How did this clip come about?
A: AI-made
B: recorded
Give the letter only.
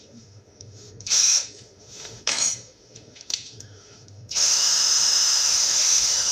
A